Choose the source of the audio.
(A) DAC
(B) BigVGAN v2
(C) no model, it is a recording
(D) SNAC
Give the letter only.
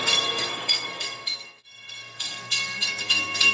D